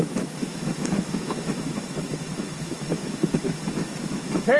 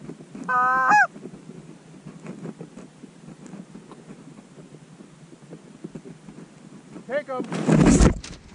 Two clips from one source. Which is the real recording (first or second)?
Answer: second